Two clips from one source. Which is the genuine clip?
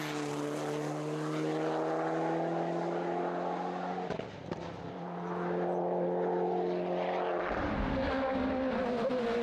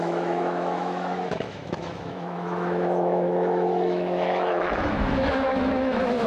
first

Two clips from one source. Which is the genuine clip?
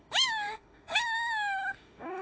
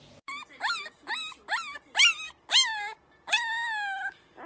second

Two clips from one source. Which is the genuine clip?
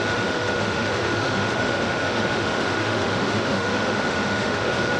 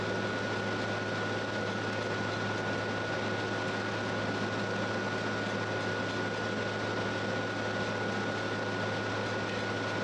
second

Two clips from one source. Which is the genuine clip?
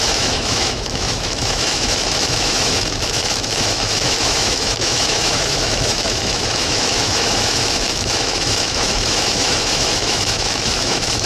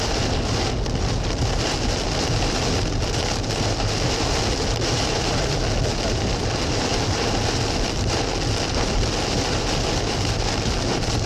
second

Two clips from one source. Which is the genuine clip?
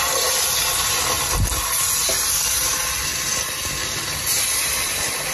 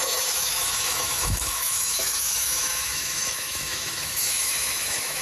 first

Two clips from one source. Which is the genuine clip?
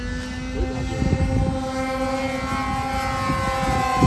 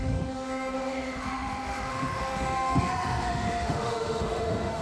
first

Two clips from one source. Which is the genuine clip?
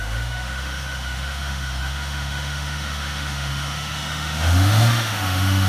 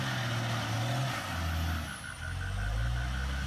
second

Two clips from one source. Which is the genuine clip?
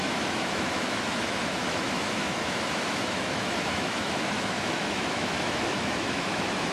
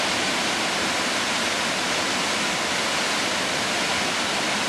second